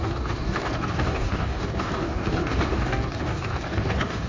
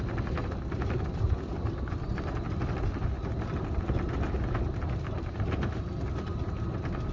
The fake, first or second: first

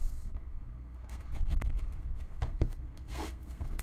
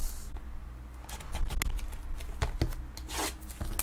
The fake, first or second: first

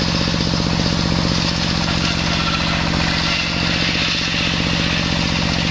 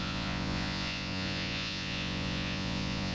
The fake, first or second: second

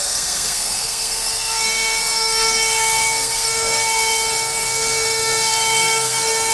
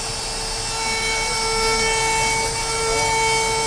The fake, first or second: first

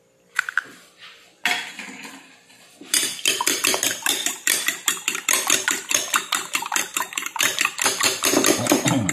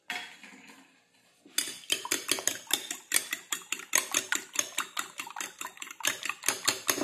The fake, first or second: first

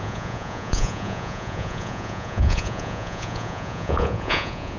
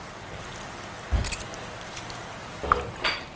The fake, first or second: first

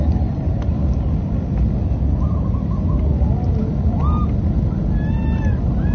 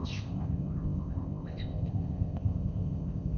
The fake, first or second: second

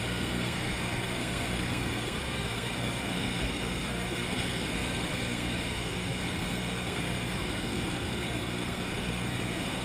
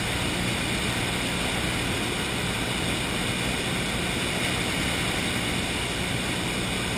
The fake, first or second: first